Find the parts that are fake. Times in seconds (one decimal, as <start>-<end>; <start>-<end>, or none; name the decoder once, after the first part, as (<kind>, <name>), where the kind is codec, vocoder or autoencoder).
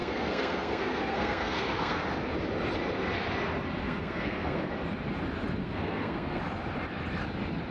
0.0-2.0 (codec, SNAC); 3.8-4.7; 5.6-6.4